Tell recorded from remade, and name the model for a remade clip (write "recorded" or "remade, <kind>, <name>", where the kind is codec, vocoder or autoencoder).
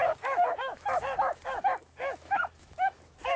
remade, autoencoder, DAC-VAE